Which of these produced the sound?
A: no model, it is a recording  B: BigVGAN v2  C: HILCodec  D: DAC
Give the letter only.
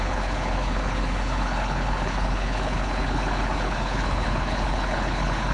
C